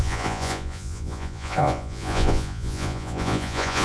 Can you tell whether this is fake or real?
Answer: fake